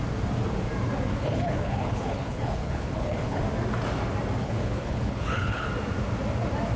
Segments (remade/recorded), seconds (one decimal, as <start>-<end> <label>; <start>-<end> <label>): 0.0-1.1 recorded; 1.1-3.4 remade; 3.4-4.4 recorded; 4.4-5.7 remade; 5.7-6.8 recorded